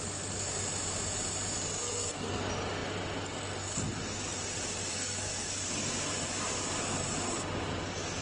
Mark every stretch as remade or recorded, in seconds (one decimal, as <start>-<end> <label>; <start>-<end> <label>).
0.0-1.8 recorded; 1.8-2.4 remade; 2.4-4.9 recorded; 4.9-5.5 remade; 5.5-8.2 recorded